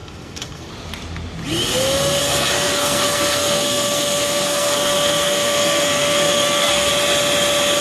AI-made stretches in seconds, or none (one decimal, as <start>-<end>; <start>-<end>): 0.0-0.7; 2.2-6.9